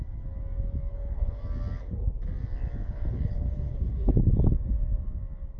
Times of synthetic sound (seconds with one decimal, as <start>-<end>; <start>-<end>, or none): 0.9-1.4; 2.8-4.2